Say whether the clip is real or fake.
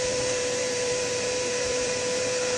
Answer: fake